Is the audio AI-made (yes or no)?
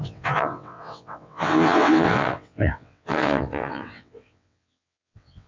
yes